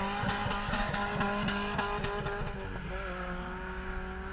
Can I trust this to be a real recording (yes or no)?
yes